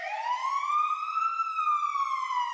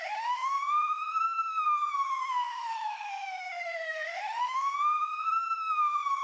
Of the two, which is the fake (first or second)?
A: second